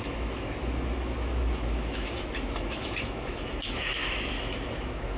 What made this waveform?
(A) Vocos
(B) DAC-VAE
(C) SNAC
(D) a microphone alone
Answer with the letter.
B